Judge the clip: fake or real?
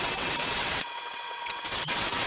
fake